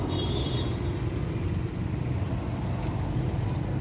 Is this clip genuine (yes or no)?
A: yes